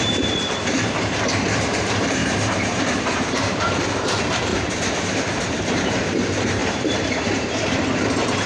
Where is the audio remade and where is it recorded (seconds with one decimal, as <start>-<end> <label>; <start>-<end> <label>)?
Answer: 0.0-4.5 remade; 4.5-5.0 recorded; 5.0-8.5 remade